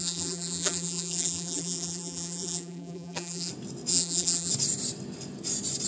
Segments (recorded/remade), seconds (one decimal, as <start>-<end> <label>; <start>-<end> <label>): 0.0-3.5 remade; 3.5-3.9 recorded; 3.9-4.5 remade; 4.5-5.9 recorded